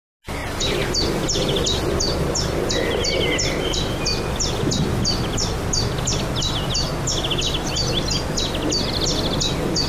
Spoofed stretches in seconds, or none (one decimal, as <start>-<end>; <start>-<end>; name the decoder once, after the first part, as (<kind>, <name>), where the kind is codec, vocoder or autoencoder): none